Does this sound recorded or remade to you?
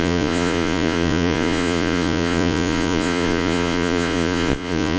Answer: remade